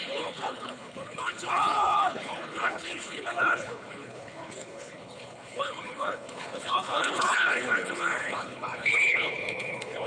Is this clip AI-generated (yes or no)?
yes